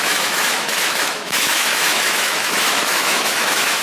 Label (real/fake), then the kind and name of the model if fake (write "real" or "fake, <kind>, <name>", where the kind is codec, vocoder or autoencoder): fake, autoencoder, DAC-VAE